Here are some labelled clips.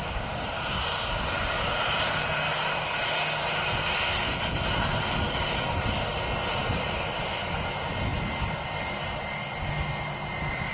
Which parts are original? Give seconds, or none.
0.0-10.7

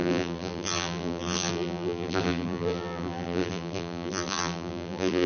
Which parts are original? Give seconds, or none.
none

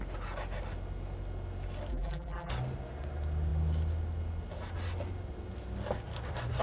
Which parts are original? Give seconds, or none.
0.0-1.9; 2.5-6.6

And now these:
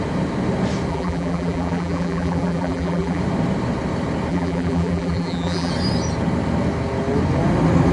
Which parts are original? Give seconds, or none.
0.0-0.9; 3.2-4.3; 5.7-7.9

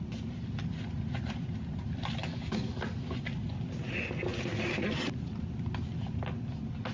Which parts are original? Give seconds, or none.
0.0-2.2; 2.8-6.9

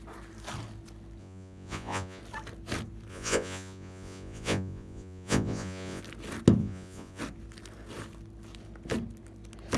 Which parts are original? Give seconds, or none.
0.0-1.2; 2.2-3.1; 6.0-6.6; 7.2-9.8

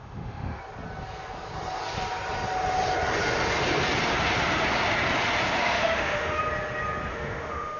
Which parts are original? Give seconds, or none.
0.6-5.6; 6.4-7.1

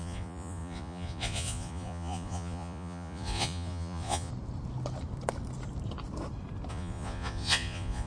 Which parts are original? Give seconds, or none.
4.3-6.7